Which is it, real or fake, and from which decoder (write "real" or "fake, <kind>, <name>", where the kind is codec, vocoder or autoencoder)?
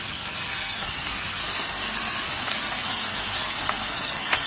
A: fake, codec, SNAC